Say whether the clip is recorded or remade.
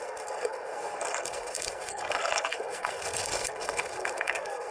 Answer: remade